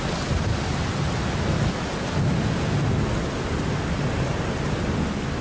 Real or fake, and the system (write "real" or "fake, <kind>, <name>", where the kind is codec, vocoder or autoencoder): real